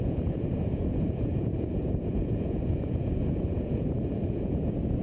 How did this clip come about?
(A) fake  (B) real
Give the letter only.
A